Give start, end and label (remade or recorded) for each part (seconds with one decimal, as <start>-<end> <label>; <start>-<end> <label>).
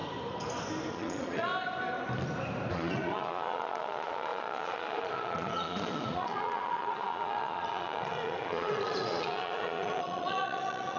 0.0-0.9 recorded; 0.9-1.5 remade; 1.5-2.7 recorded; 2.7-11.0 remade